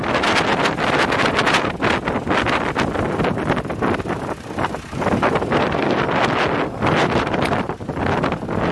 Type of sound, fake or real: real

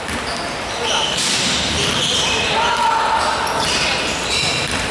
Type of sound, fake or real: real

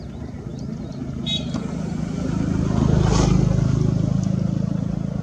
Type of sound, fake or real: real